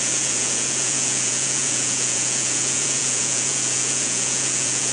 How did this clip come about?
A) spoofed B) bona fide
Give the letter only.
A